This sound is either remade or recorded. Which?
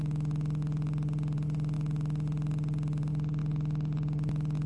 recorded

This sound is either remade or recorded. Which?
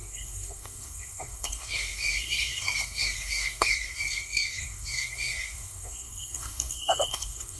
remade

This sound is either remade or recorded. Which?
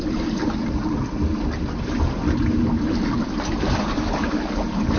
recorded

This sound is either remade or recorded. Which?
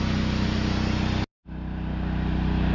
recorded